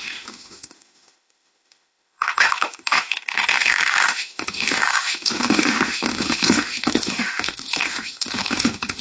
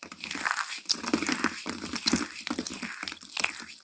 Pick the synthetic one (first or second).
first